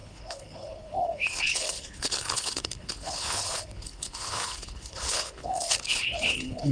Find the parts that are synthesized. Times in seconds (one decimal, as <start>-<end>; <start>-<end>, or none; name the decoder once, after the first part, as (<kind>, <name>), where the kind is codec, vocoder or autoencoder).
0.0-6.7 (codec, HILCodec)